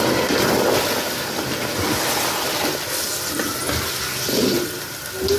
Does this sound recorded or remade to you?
recorded